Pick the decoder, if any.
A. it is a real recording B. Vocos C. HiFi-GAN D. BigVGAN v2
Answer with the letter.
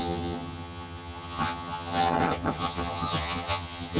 C